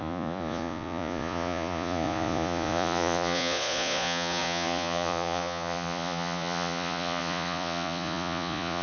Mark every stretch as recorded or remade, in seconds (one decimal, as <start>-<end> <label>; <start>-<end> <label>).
0.0-8.8 remade